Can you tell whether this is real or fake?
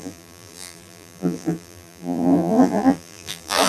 fake